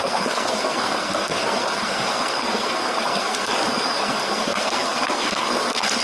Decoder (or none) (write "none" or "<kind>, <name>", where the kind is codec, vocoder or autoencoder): codec, SNAC